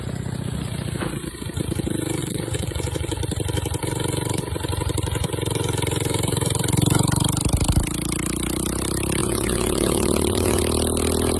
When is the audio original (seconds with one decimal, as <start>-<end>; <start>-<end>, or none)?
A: 0.0-2.2; 3.2-9.2; 10.6-11.4